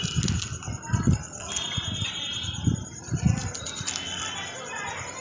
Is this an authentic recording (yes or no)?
yes